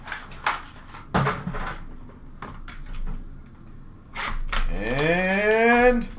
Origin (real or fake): real